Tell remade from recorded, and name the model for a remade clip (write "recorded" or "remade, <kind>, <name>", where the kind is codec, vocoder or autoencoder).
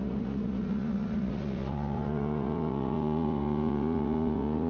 remade, vocoder, Vocos